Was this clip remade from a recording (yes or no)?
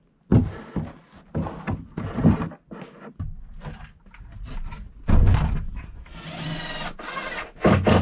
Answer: no